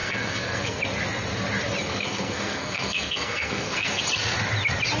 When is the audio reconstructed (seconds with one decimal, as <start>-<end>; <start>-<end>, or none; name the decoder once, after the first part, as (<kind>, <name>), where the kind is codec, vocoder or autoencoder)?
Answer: 0.0-0.8 (codec, SNAC); 1.9-4.0